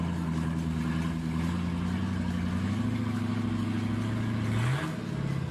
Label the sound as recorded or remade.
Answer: recorded